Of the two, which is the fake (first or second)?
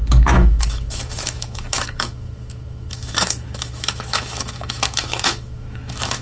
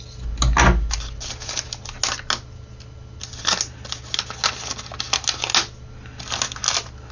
first